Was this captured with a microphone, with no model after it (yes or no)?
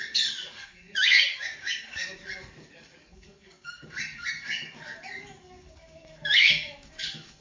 no